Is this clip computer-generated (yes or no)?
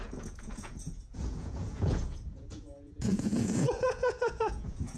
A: yes